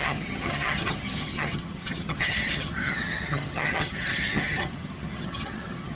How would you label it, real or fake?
fake